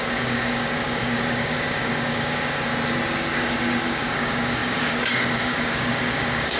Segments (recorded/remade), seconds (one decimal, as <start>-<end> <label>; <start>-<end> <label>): 0.0-2.7 remade; 2.7-3.3 recorded; 3.3-6.6 remade

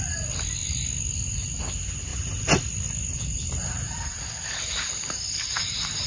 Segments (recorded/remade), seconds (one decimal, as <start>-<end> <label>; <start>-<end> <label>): 0.0-6.1 recorded

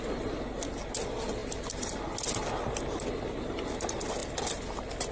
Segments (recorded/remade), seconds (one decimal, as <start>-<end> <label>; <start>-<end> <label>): 0.0-5.1 recorded